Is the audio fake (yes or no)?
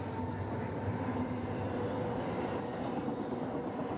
no